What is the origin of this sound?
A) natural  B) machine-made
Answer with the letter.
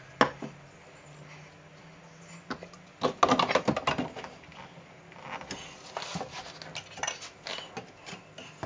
A